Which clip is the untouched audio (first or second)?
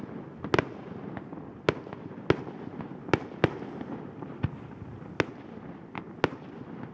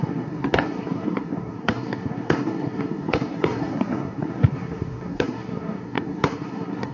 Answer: first